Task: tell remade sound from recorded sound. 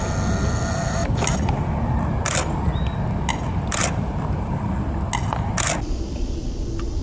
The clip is recorded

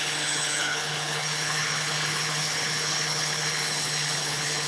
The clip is remade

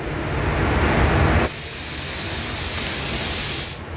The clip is recorded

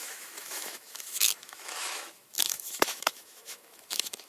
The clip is remade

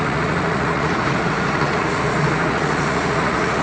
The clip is remade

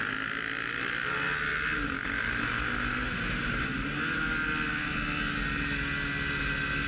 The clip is recorded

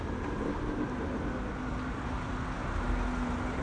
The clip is recorded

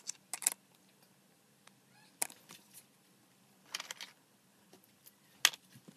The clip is recorded